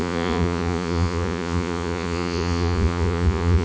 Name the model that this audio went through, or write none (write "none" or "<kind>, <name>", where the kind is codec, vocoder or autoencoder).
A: vocoder, Vocos